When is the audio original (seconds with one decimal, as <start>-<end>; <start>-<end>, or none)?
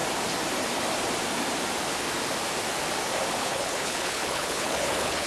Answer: 0.0-3.4